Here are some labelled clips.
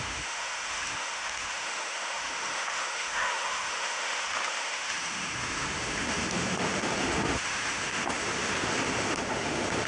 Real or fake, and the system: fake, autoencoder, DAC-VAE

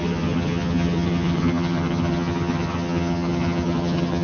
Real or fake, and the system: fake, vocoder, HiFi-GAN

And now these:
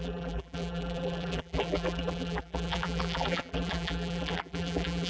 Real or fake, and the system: fake, vocoder, BigVGAN v2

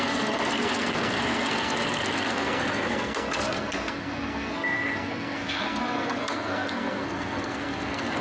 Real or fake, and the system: fake, codec, SNAC